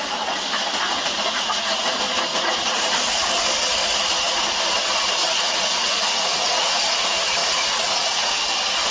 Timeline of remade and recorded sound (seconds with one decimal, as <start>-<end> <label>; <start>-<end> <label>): 0.0-2.3 recorded; 2.3-2.8 remade; 2.8-5.2 recorded; 5.2-6.8 remade; 6.8-7.4 recorded; 7.4-8.3 remade; 8.3-8.9 recorded